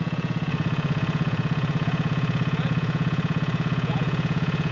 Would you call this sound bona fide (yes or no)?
no